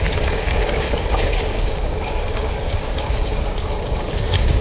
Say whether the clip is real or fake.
fake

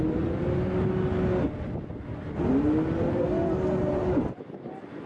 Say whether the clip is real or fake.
real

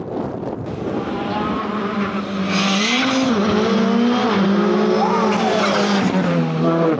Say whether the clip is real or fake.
real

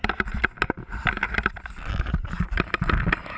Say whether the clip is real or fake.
real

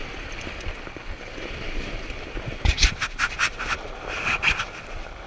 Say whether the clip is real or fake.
fake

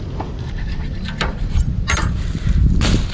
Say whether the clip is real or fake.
real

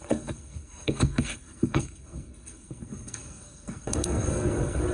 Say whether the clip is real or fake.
fake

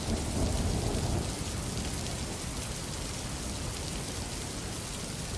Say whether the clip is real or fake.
real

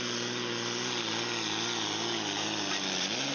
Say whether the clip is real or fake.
real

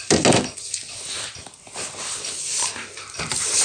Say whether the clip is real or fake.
real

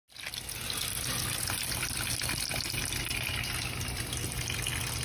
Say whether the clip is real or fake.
real